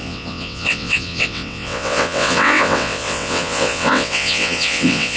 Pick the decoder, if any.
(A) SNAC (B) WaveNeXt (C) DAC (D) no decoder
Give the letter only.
B